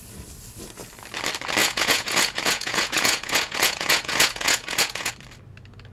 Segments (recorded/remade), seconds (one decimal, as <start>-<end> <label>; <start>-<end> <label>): 0.0-1.6 recorded; 1.6-5.1 remade; 5.1-5.9 recorded